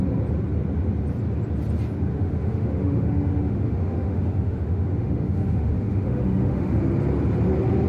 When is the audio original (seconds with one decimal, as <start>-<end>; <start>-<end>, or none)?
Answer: 0.0-2.1; 6.8-7.9